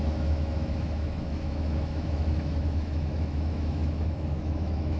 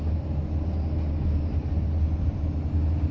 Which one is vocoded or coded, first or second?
first